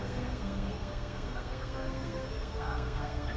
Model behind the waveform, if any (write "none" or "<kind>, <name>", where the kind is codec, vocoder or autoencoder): codec, SNAC